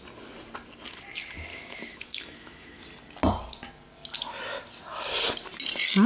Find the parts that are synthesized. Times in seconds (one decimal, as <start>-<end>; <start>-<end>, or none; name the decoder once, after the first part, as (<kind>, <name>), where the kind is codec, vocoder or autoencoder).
1.5-2.8 (autoencoder, DAC-VAE)